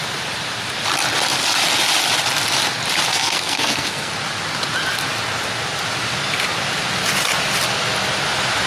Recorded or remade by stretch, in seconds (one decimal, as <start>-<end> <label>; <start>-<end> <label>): 0.0-3.1 recorded; 3.1-4.1 remade; 4.1-8.7 recorded